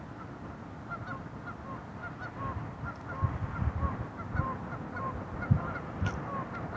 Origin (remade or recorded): recorded